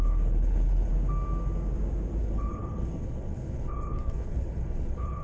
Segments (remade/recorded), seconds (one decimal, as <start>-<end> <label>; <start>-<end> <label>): 0.0-0.9 remade; 0.9-2.2 recorded; 2.2-5.2 remade